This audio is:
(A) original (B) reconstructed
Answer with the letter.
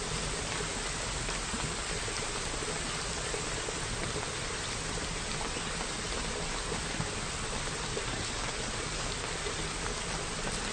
A